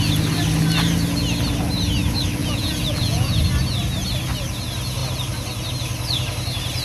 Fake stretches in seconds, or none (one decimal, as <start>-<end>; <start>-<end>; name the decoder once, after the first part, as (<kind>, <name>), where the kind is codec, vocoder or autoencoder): 2.4-3.4 (vocoder, Vocos)